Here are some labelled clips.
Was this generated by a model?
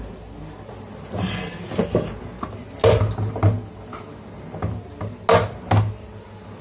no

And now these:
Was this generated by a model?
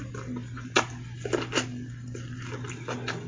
no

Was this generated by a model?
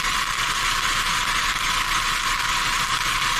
yes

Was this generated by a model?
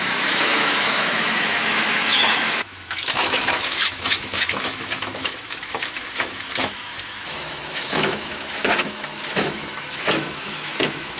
yes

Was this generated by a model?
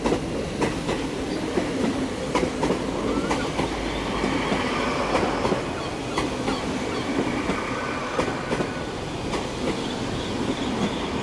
no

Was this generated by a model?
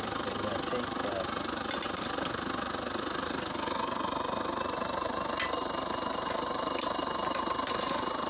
no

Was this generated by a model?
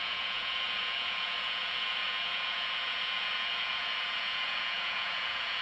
yes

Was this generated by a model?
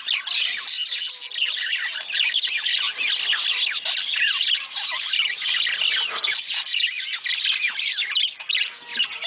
no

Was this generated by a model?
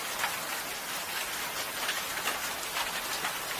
no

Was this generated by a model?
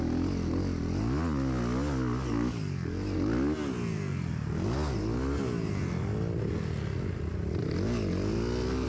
no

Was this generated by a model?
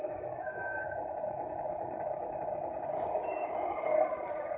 yes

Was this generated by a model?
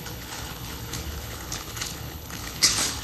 yes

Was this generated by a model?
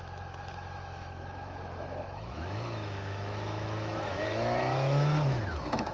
yes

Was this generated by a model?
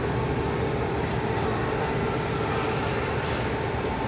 no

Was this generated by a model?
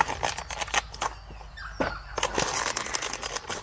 no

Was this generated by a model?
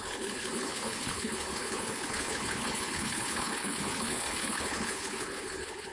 yes